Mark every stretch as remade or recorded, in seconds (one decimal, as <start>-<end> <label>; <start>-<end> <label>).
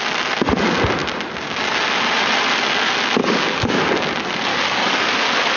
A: 0.0-3.2 recorded; 3.2-3.8 remade; 3.8-4.5 recorded; 4.5-5.1 remade; 5.1-5.6 recorded